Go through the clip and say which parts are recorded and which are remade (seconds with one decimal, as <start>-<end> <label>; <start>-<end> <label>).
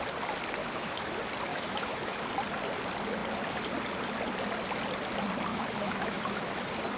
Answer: 0.0-0.6 recorded; 0.6-1.1 remade; 1.1-1.5 recorded; 1.5-2.2 remade; 2.2-5.5 recorded; 5.5-6.5 remade; 6.5-7.0 recorded